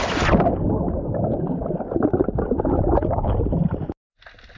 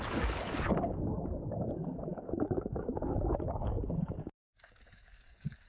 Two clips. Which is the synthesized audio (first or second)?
second